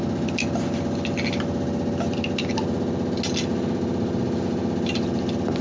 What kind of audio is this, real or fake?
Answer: real